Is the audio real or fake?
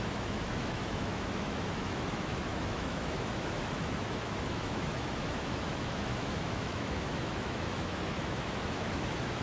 fake